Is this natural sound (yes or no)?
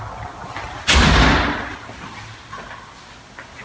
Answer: yes